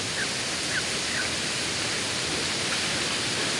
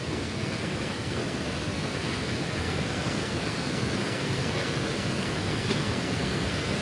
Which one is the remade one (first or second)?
second